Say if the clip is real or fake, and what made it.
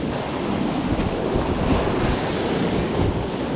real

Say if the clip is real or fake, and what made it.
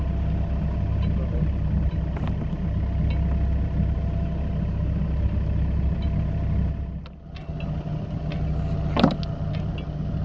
real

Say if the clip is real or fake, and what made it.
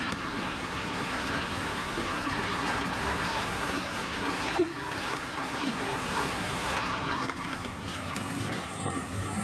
fake, codec, SNAC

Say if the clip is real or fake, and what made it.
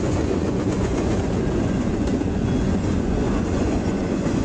fake, vocoder, Vocos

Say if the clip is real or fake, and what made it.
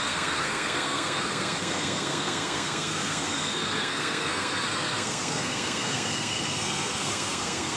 fake, codec, SNAC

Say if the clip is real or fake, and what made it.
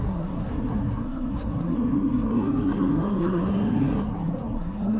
fake, codec, SNAC